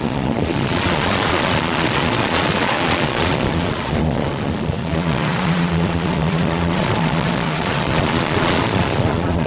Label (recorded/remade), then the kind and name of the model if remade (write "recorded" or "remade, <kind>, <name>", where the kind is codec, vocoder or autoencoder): remade, vocoder, Vocos